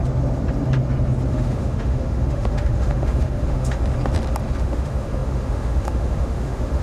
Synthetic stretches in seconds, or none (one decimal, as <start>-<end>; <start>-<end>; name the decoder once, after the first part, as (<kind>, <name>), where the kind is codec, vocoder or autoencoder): 1.3-3.8 (autoencoder, DAC-VAE); 4.6-6.8